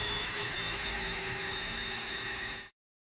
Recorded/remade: remade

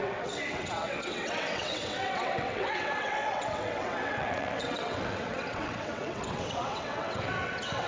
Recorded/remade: remade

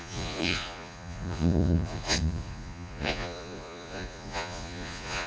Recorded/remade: remade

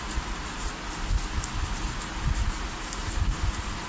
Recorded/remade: recorded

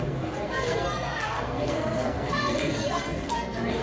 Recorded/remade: remade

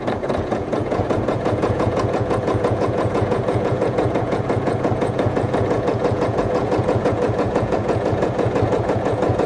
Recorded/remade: remade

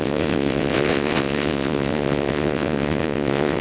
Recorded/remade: remade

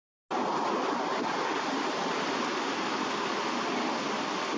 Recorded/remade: recorded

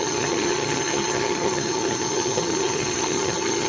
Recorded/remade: remade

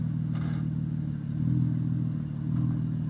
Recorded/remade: recorded